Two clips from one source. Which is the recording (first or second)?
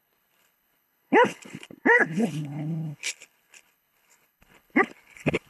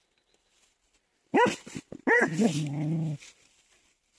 second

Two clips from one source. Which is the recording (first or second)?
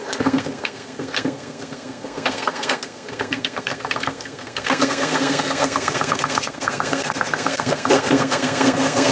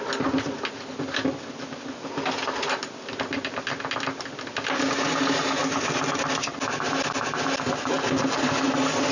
second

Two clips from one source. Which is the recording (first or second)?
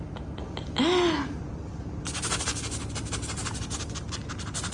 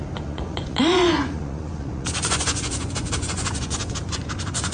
first